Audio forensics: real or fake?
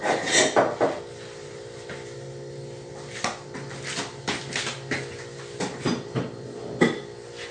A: real